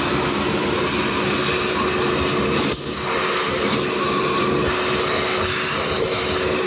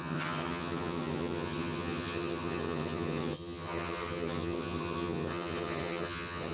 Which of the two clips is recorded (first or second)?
first